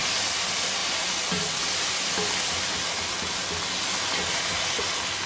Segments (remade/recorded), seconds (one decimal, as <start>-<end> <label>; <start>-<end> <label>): 0.0-5.3 recorded